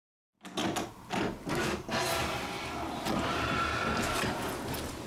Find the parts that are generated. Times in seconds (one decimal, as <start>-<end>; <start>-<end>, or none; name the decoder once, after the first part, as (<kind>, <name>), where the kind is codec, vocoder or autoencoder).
none